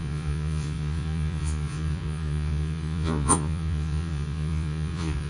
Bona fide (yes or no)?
no